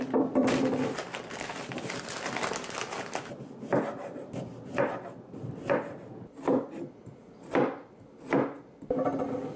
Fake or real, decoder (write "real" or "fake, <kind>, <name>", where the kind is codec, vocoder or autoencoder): real